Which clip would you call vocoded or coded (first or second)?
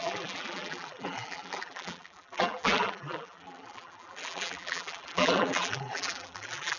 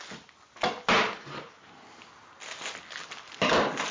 first